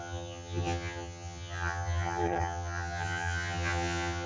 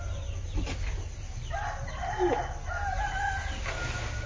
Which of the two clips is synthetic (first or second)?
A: first